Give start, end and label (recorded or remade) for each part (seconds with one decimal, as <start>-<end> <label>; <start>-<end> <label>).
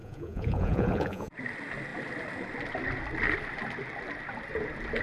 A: 0.0-1.3 remade; 1.3-5.0 recorded